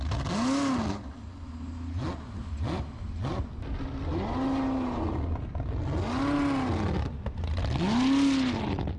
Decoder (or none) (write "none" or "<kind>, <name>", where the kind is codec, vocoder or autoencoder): none